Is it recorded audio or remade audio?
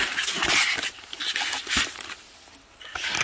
recorded